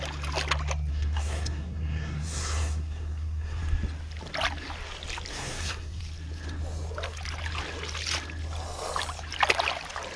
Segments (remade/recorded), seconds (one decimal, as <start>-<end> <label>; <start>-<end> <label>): 0.0-0.9 recorded; 0.9-3.6 remade; 3.6-5.3 recorded; 5.3-6.0 remade; 6.0-10.2 recorded